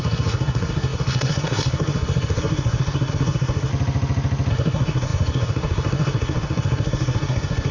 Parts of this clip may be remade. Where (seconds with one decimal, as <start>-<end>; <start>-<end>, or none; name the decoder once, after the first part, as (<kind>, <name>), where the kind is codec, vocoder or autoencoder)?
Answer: 0.0-3.7 (codec, SNAC); 4.5-7.7